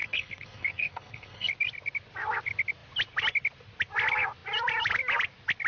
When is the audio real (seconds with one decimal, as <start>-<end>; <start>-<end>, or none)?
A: 1.5-5.7